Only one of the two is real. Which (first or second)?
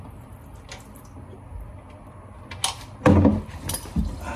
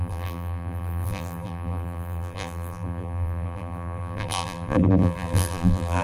first